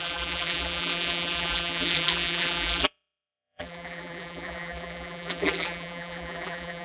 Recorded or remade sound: remade